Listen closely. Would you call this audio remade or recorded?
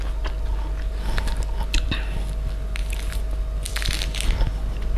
recorded